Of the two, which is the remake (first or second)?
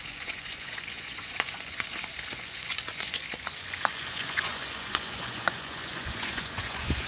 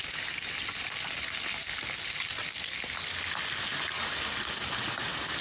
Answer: first